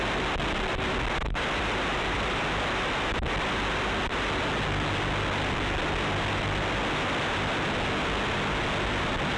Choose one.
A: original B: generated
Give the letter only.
A